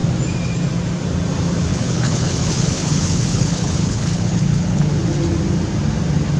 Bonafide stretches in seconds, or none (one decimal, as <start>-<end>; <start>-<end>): 0.0-1.7; 4.9-6.4